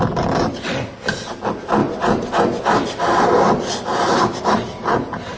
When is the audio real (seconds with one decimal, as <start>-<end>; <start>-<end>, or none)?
0.0-5.4